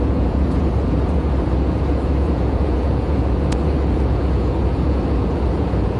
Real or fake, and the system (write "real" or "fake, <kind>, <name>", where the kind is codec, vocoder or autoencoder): fake, vocoder, Vocos